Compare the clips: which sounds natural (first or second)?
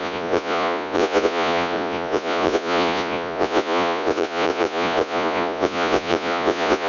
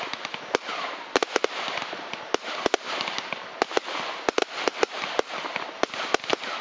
second